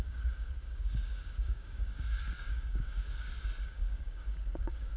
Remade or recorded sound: remade